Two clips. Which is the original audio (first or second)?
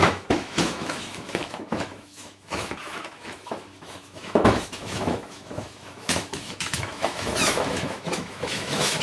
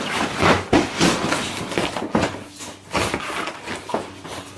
second